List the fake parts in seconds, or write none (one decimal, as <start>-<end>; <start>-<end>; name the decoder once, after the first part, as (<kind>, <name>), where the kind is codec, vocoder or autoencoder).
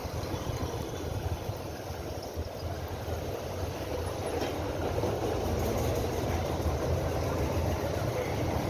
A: none